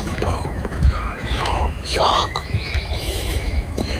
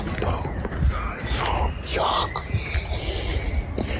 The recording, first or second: second